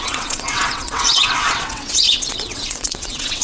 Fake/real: fake